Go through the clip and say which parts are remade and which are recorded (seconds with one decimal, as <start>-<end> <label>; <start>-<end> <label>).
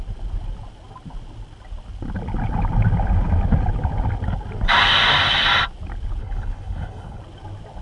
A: 0.0-6.2 recorded; 6.2-7.2 remade; 7.2-7.8 recorded